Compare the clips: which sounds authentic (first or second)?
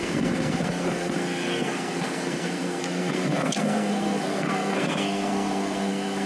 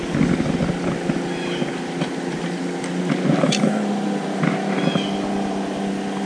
second